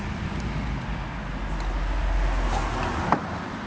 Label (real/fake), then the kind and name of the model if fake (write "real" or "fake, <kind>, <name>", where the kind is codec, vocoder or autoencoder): real